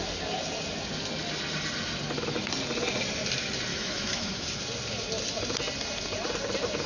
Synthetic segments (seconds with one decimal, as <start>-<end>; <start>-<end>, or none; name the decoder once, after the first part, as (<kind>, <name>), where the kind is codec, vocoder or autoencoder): 3.7-4.6 (autoencoder, DAC-VAE)